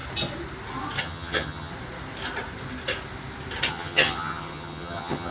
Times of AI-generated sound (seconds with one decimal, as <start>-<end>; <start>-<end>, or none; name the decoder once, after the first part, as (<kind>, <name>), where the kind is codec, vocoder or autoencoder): 1.0-1.7 (vocoder, HiFi-GAN); 3.7-5.3